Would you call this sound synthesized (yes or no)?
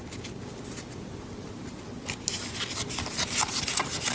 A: no